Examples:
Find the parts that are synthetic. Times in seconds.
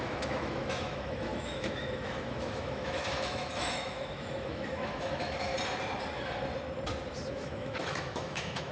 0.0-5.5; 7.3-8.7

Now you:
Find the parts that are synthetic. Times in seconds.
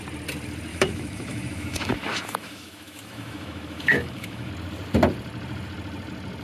0.7-4.5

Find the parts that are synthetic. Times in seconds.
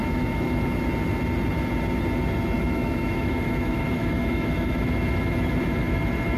0.0-0.9; 2.6-6.4